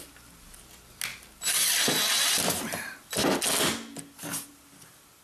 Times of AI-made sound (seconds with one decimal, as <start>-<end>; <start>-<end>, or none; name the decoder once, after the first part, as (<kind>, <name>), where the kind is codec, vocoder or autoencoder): none